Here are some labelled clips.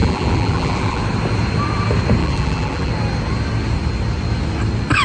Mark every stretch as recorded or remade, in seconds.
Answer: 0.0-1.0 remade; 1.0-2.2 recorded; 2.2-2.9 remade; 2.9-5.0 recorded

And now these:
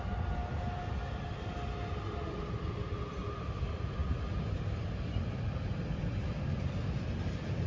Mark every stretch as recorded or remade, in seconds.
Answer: 0.0-7.7 recorded

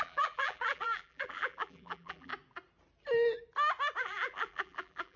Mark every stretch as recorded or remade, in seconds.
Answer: 0.0-2.3 remade; 2.3-4.0 recorded; 4.0-5.2 remade